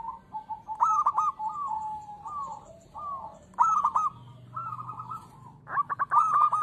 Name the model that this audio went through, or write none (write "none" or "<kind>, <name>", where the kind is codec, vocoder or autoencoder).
none